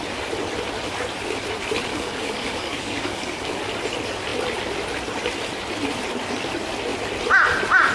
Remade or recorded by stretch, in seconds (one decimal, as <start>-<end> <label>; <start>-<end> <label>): 0.0-1.9 recorded; 1.9-3.6 remade; 3.6-7.9 recorded